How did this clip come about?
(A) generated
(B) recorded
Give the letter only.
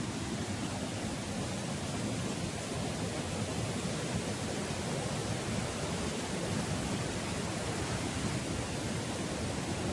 B